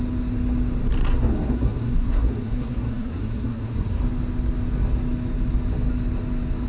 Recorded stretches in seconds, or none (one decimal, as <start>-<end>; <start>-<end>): 0.0-1.1; 4.0-6.7